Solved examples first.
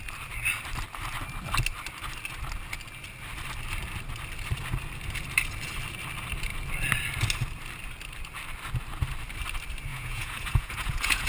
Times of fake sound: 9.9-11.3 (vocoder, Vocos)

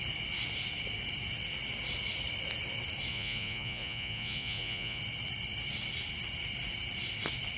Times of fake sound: 3.1-5.0 (vocoder, Vocos)